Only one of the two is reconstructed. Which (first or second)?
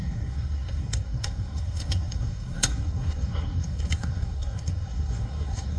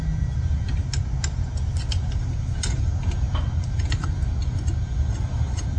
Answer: first